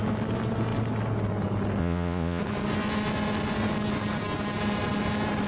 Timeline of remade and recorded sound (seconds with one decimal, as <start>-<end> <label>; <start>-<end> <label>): 0.0-1.8 recorded; 1.8-2.4 remade; 2.4-5.5 recorded